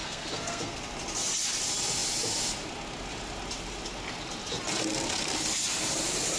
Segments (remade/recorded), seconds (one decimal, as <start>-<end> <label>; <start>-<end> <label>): 0.0-0.8 remade; 0.8-6.4 recorded